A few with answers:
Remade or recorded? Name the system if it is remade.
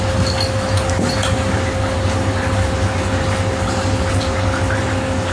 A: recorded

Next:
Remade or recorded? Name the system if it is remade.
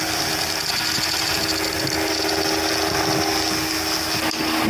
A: recorded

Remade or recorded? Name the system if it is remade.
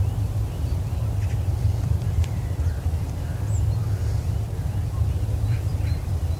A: remade, vocoder, BigVGAN v2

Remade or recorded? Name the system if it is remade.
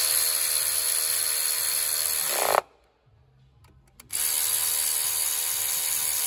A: recorded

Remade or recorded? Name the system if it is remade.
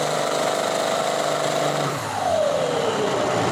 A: remade, vocoder, BigVGAN v2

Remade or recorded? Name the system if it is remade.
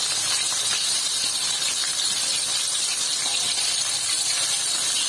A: remade, vocoder, BigVGAN v2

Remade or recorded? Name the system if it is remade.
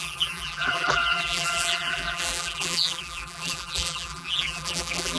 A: remade, vocoder, BigVGAN v2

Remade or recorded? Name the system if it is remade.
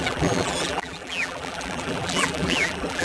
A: remade, vocoder, BigVGAN v2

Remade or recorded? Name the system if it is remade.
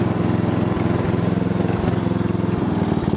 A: recorded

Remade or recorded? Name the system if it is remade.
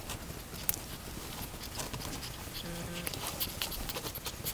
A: recorded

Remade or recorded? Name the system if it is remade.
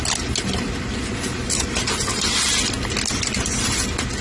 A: recorded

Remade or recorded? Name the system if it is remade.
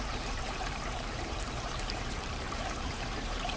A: remade, vocoder, BigVGAN v2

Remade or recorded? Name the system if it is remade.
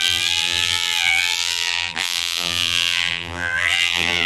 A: remade, vocoder, BigVGAN v2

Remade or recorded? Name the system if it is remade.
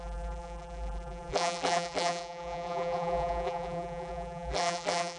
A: remade, vocoder, BigVGAN v2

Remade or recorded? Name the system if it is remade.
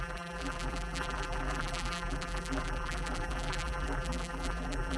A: remade, vocoder, BigVGAN v2